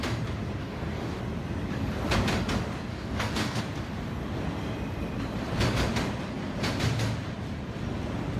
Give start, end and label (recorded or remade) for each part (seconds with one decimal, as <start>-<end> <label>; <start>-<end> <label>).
0.0-0.6 recorded; 0.6-1.2 remade; 1.2-2.9 recorded; 2.9-3.6 remade; 3.6-8.4 recorded